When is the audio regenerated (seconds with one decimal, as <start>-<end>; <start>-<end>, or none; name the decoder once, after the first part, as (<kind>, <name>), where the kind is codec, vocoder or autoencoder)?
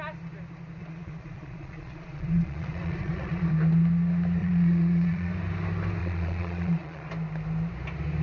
0.8-3.5 (vocoder, Vocos); 4.4-5.3; 6.0-7.1